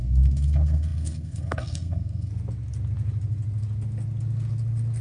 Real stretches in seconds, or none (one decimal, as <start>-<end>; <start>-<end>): 2.3-5.0